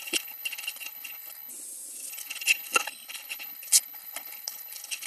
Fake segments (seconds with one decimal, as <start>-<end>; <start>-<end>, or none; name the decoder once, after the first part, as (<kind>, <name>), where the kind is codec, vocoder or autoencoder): 0.0-1.5 (codec, HILCodec); 2.1-5.1

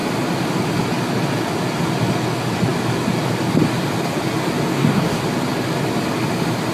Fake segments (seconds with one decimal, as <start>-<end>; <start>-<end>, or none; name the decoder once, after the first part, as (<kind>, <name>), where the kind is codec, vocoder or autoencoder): 4.7-5.2 (codec, DAC)

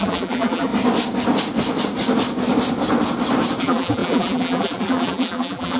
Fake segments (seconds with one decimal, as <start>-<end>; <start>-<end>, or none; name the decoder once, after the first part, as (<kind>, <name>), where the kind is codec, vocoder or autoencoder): 0.0-0.7 (vocoder, BigVGAN v2); 3.6-5.8

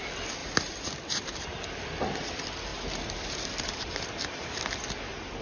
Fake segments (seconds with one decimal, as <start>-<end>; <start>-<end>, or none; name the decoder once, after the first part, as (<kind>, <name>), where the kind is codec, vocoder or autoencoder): 0.4-2.3 (vocoder, BigVGAN v2); 2.7-4.5

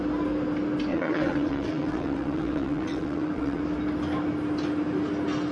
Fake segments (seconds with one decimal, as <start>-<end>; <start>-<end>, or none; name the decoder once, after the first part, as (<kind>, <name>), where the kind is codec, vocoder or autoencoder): 0.9-3.6 (vocoder, WaveNeXt)